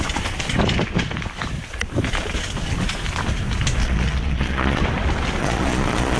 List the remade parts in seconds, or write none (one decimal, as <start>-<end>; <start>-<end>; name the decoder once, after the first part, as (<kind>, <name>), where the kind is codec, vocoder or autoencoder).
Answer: 3.8-4.8 (vocoder, Vocos); 5.4-6.2